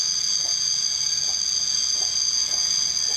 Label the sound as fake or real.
real